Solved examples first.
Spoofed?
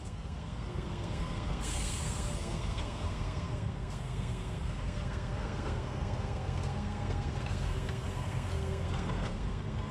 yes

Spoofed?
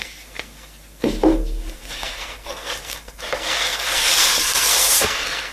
yes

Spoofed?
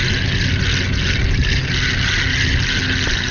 no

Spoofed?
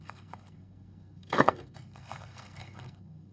yes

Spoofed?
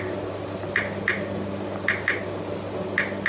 no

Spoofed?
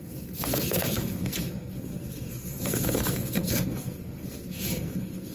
yes